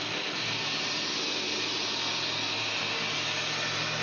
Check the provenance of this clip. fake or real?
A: real